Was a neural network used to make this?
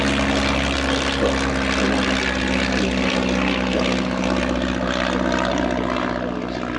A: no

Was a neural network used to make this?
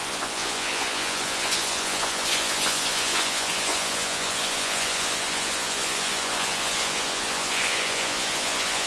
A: yes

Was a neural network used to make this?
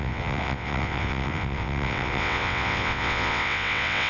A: yes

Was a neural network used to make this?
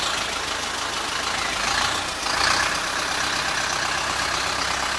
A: no